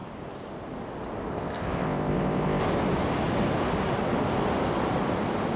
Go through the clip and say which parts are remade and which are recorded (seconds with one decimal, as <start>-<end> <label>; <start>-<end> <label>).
0.0-1.3 recorded; 1.3-2.6 remade; 2.6-5.6 recorded